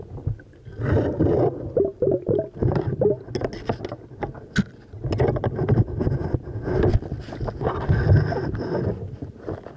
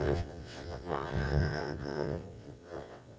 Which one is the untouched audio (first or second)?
first